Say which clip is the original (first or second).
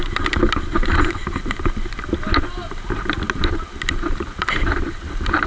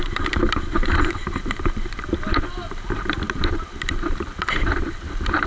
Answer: first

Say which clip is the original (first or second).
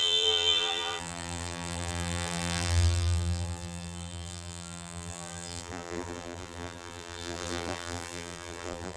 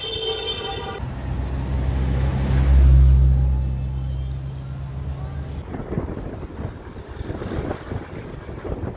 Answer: second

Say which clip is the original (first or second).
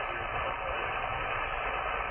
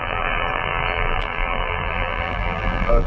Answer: first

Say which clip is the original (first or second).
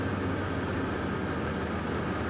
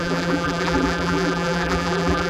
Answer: first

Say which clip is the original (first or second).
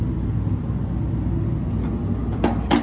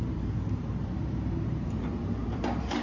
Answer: first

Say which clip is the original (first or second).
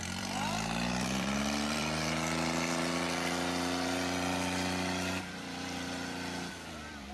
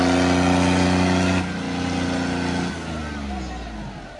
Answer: second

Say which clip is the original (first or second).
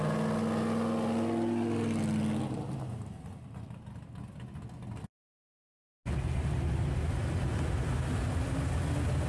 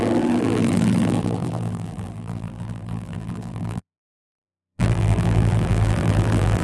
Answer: first